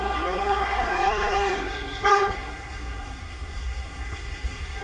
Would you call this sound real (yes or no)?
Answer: no